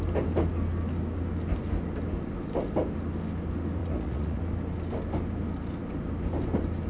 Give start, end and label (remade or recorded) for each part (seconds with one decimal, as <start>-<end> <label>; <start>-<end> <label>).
0.0-3.8 recorded; 3.8-4.4 remade; 4.4-6.9 recorded